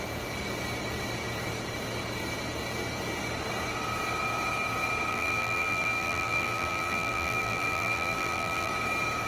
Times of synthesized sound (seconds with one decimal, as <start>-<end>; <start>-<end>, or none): 5.1-8.7